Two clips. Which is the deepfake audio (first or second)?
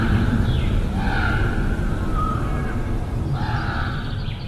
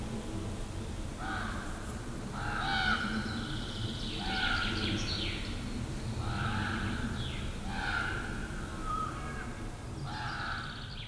first